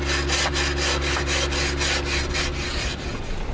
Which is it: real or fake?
real